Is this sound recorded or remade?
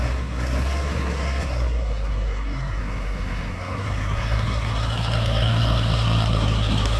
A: remade